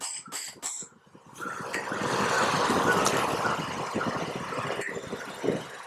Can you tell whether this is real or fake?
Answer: real